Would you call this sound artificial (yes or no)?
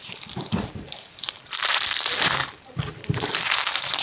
yes